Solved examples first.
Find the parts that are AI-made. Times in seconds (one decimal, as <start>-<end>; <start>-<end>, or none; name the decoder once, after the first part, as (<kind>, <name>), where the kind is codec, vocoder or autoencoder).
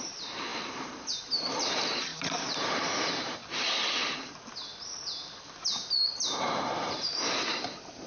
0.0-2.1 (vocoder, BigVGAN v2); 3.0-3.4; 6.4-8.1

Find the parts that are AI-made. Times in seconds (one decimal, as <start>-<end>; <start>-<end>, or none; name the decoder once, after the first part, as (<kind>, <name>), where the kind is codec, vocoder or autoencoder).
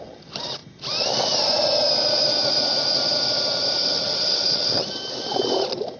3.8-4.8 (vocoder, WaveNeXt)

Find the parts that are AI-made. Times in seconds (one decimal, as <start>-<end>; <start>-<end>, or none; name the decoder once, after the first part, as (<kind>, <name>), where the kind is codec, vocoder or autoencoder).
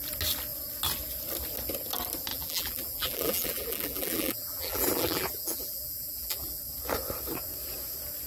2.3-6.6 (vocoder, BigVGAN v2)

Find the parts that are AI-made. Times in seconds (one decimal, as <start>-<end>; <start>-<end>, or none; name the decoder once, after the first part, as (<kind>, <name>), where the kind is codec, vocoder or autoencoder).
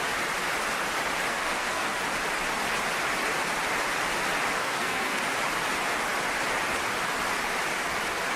1.3-2.0 (codec, SNAC); 4.6-5.2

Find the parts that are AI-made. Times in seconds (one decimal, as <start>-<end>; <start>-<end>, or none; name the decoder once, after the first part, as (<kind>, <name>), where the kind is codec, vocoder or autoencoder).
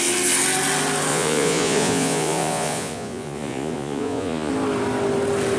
1.1-4.5 (vocoder, Vocos)